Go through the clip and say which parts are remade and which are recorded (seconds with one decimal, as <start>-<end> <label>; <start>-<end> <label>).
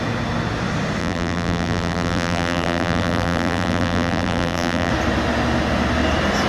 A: 0.0-1.0 recorded; 1.0-4.9 remade; 4.9-6.5 recorded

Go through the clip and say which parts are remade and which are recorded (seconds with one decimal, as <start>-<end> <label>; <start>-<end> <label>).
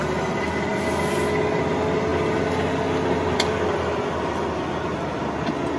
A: 0.0-5.8 recorded